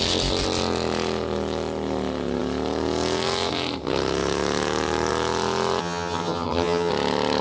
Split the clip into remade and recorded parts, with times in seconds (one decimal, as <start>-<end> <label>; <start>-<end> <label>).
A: 0.0-5.8 recorded; 5.8-6.9 remade; 6.9-7.4 recorded